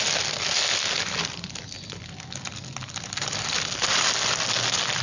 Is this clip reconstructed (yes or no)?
no